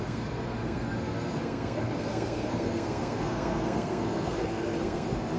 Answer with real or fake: fake